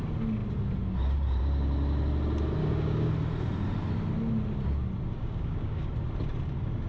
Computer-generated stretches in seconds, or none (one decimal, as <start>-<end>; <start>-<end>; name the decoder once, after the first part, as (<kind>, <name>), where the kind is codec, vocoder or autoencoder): 2.6-3.1 (codec, DAC); 5.2-5.9